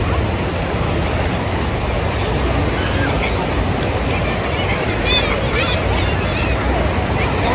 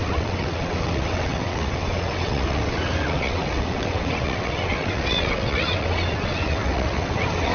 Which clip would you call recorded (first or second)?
first